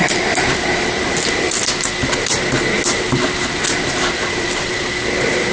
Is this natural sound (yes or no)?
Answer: yes